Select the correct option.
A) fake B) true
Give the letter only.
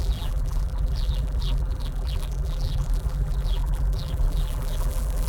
A